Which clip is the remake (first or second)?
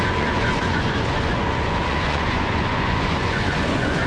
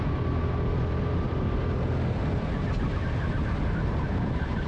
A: first